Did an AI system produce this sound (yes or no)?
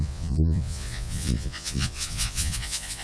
yes